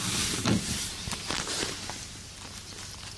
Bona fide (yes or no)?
yes